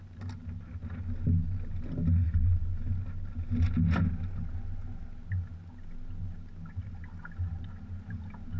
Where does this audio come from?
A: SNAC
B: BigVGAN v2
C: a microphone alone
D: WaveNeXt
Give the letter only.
C